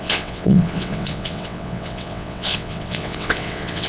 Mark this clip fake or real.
fake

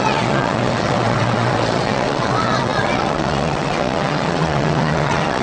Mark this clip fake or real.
fake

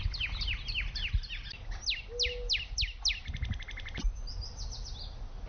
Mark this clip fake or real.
real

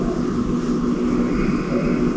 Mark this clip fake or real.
real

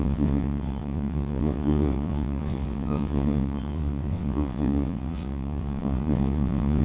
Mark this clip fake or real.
fake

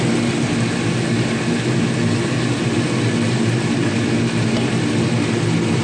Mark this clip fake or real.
real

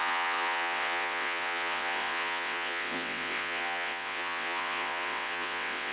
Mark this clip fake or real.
fake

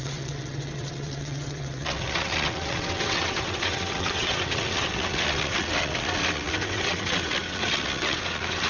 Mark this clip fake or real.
fake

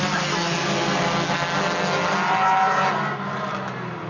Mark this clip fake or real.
real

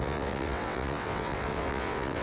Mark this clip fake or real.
fake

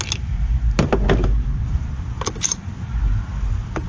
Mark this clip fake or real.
real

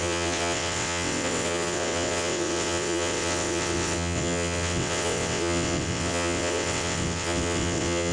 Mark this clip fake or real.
fake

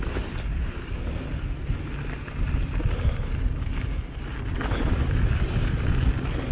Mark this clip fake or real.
real